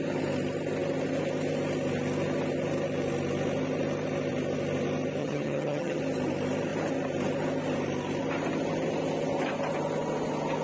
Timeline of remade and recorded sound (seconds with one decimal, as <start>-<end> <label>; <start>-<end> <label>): 0.0-5.2 recorded; 5.2-6.0 remade; 6.0-10.6 recorded